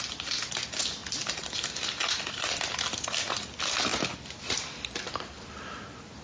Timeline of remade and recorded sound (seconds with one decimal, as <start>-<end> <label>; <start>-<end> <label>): 0.0-6.2 recorded